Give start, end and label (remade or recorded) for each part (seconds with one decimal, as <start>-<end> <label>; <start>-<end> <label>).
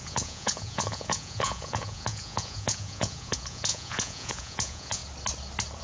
0.0-5.0 remade; 5.0-5.8 recorded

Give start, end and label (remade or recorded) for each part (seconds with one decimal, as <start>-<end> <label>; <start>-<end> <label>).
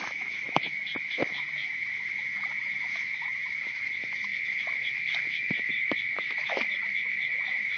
0.0-7.8 remade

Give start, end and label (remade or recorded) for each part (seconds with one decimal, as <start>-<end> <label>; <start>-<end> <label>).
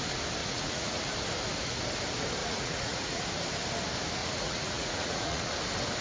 0.0-0.4 recorded; 0.4-1.0 remade; 1.0-2.4 recorded; 2.4-3.2 remade; 3.2-4.2 recorded; 4.2-5.5 remade; 5.5-6.0 recorded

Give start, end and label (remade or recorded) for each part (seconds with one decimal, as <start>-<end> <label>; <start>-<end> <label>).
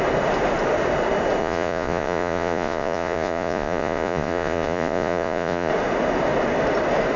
0.0-1.4 recorded; 1.4-5.7 remade; 5.7-7.2 recorded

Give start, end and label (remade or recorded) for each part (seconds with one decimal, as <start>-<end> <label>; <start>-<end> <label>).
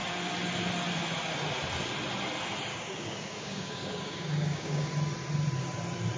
0.0-2.7 recorded; 2.7-4.9 remade; 4.9-6.2 recorded